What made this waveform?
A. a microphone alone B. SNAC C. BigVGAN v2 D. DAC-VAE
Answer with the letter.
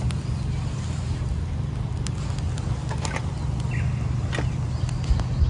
A